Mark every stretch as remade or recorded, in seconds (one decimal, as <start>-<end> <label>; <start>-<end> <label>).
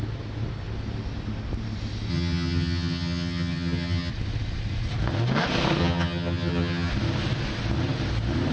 0.0-2.1 recorded; 2.1-4.1 remade; 4.1-5.8 recorded; 5.8-6.9 remade; 6.9-8.5 recorded